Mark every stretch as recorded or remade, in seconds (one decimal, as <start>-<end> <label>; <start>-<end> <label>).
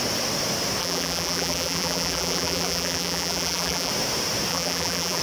0.0-0.8 recorded; 0.8-3.9 remade; 3.9-4.5 recorded; 4.5-5.2 remade